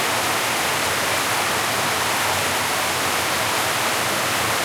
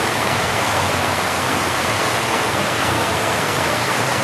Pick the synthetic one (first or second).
second